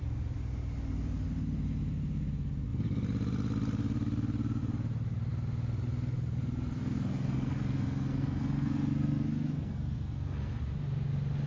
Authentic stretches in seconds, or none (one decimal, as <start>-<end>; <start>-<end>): 0.0-6.4; 10.6-11.5